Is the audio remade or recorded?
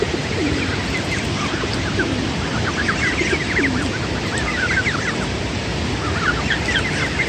recorded